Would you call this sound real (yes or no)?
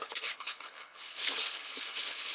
no